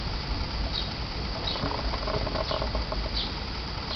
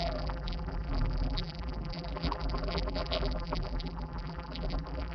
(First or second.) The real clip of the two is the first